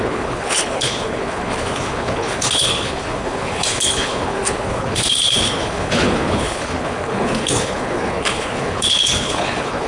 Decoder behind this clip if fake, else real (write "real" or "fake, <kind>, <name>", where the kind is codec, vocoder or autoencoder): fake, codec, HILCodec